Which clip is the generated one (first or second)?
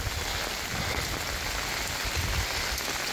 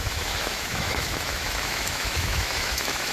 second